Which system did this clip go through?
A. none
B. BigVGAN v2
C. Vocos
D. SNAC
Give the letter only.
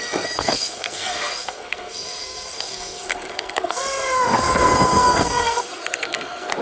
D